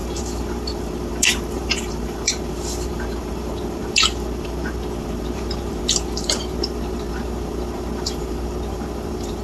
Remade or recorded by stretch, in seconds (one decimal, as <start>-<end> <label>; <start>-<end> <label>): 0.0-9.4 remade